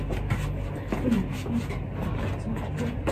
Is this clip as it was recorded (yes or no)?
yes